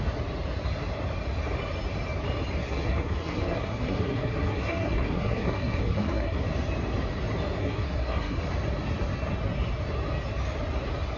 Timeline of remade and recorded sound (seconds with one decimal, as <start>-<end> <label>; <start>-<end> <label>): 0.0-2.6 recorded; 2.6-6.4 remade; 6.4-7.6 recorded; 7.6-8.4 remade; 8.4-11.2 recorded